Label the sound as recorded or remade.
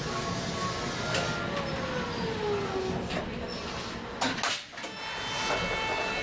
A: recorded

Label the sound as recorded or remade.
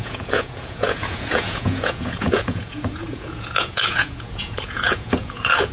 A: remade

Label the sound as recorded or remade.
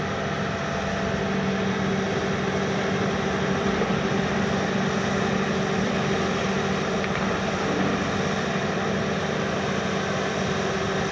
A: recorded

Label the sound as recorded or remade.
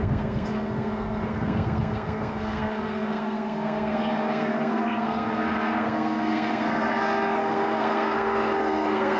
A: remade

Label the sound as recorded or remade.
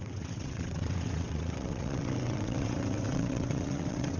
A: remade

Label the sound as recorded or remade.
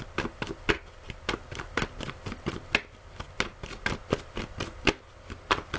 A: recorded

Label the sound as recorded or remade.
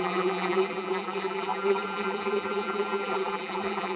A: remade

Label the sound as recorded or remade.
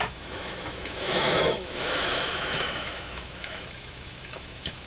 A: remade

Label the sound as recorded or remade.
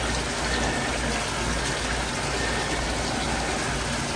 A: recorded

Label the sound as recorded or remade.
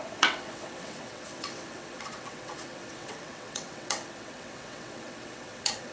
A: remade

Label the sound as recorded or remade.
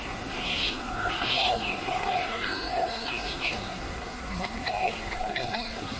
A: remade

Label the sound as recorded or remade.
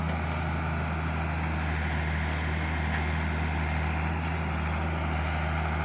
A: recorded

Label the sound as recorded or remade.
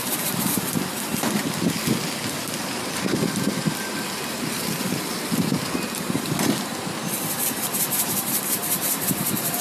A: remade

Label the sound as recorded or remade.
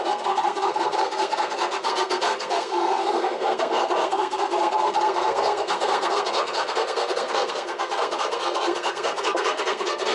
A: remade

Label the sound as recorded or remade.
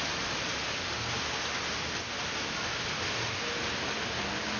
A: recorded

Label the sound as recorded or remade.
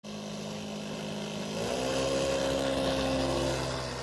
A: recorded